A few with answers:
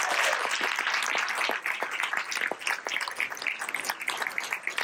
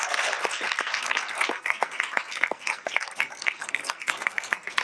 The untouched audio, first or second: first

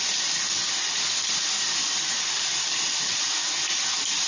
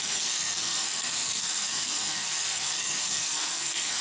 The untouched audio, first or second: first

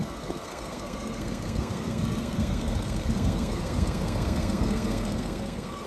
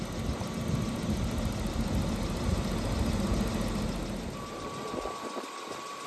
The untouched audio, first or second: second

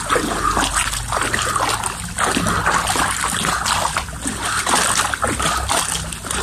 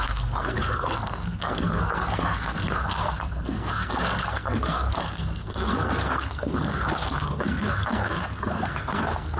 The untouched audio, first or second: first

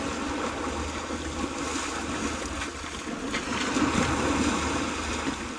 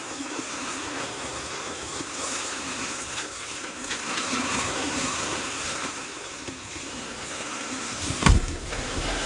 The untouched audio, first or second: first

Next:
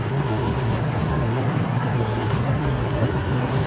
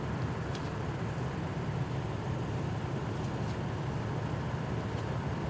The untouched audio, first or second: second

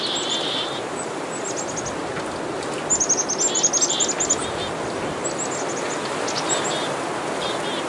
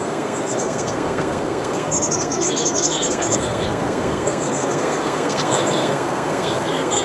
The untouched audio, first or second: first